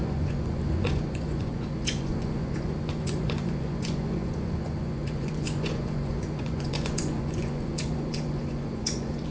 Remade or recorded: remade